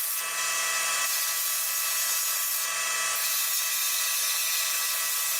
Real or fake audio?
real